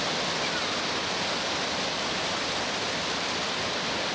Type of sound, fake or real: real